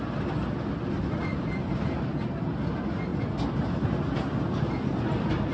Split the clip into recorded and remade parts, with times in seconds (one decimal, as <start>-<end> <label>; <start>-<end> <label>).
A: 0.0-1.3 recorded; 1.3-2.0 remade; 2.0-3.1 recorded; 3.1-4.7 remade; 4.7-5.5 recorded